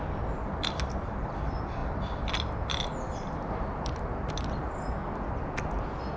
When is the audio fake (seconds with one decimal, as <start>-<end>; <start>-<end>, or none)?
none